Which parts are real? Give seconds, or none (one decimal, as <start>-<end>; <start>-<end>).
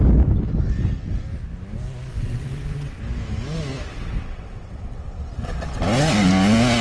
0.0-2.1; 3.0-3.9; 5.8-6.8